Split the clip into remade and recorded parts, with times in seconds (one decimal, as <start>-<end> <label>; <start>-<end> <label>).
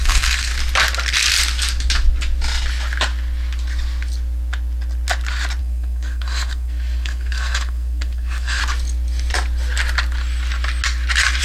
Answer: 0.0-0.5 remade; 0.5-5.6 recorded; 5.6-8.6 remade; 8.6-11.4 recorded